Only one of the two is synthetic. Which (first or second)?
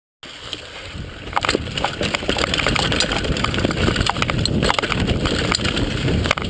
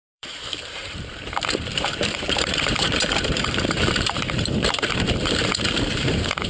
second